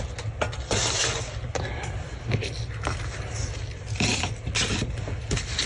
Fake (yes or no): no